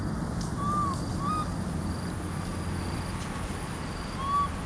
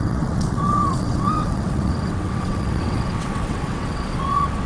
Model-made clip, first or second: second